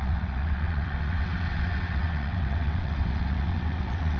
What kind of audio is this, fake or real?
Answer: fake